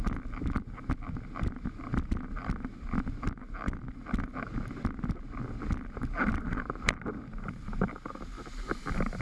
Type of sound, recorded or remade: recorded